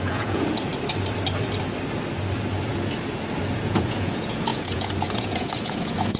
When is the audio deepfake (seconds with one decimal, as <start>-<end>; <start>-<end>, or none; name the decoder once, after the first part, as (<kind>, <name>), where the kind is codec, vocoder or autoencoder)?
0.0-0.7 (vocoder, Vocos); 3.5-6.2